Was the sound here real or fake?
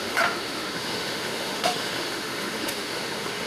fake